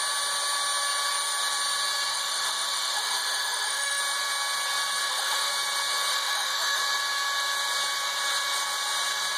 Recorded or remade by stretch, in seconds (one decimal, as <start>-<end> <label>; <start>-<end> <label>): 0.0-2.1 recorded; 2.1-4.0 remade; 4.0-5.0 recorded; 5.0-5.5 remade; 5.5-6.1 recorded; 6.1-6.8 remade; 6.8-9.4 recorded

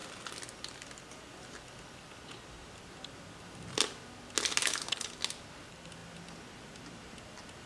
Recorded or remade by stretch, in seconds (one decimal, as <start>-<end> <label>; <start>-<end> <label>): 0.0-7.7 recorded

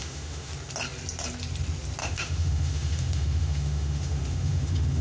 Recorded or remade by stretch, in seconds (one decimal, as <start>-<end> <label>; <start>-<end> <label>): 0.0-0.5 remade; 0.5-2.0 recorded; 2.0-5.0 remade

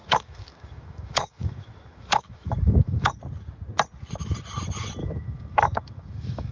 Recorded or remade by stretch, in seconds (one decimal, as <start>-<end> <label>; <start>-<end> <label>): 0.0-3.2 remade; 3.2-5.0 recorded; 5.0-6.5 remade

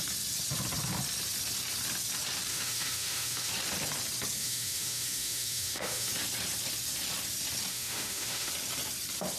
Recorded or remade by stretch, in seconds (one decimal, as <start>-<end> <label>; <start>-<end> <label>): 0.0-2.5 recorded; 2.5-3.5 remade; 3.5-4.4 recorded; 4.4-6.1 remade; 6.1-7.7 recorded; 7.7-8.5 remade; 8.5-9.4 recorded

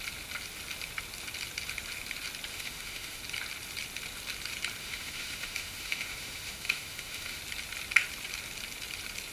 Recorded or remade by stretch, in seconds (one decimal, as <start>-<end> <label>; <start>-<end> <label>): 0.0-2.5 recorded; 2.5-3.2 remade; 3.2-4.8 recorded; 4.8-7.4 remade; 7.4-9.3 recorded

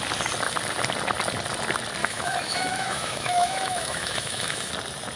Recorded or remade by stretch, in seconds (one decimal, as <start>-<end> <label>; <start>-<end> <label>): 0.0-2.0 recorded; 2.0-4.7 remade; 4.7-5.2 recorded